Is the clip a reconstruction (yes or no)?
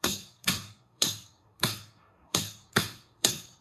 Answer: yes